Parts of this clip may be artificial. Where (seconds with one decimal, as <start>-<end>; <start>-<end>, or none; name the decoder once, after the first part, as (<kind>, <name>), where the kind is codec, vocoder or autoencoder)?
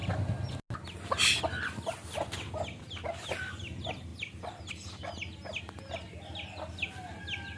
none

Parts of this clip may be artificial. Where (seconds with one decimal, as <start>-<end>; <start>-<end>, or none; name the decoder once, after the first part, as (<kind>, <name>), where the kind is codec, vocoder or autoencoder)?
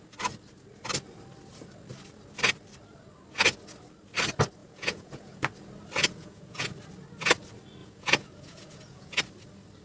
4.6-5.4 (vocoder, Vocos); 6.0-6.7; 7.8-9.2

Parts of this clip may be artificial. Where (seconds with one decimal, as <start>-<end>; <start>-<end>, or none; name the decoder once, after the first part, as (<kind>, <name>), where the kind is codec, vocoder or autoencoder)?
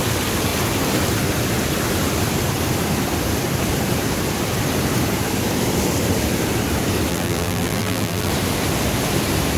7.1-8.3 (vocoder, BigVGAN v2)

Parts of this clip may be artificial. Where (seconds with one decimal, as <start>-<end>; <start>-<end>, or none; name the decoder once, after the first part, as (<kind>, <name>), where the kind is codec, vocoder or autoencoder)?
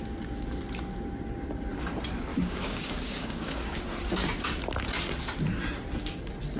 2.3-3.8 (codec, DAC)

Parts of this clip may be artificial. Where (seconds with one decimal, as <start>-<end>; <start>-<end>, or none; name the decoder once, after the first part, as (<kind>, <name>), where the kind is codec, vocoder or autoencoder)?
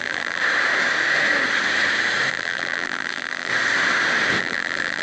0.0-0.4 (vocoder, BigVGAN v2); 2.3-3.5; 4.4-5.0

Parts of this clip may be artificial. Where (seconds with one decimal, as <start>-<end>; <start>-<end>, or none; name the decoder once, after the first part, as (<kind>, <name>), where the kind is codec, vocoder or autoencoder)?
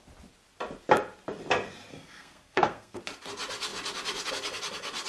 1.9-3.0 (codec, SNAC)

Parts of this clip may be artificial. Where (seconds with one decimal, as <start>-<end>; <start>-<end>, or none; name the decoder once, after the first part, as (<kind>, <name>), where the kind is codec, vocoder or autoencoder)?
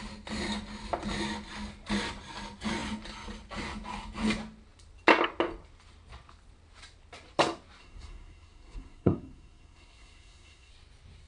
7.8-10.7 (codec, SNAC)